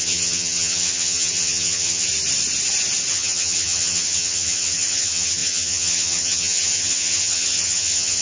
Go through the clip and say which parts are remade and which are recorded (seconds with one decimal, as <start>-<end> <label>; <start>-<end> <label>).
0.0-2.1 remade; 2.1-3.1 recorded; 3.1-8.2 remade